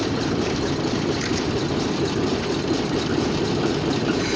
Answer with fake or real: fake